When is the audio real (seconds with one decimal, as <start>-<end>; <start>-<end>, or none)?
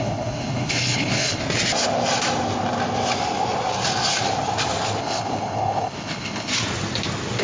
1.4-5.0; 6.5-7.4